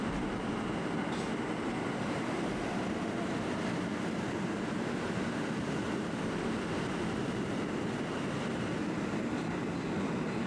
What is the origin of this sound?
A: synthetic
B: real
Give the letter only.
B